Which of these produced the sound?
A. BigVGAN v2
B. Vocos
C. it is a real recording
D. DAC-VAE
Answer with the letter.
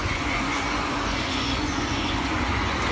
B